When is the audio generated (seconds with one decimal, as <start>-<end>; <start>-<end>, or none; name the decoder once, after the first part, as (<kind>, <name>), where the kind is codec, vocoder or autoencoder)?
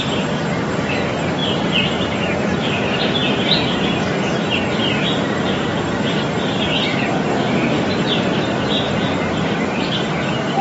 none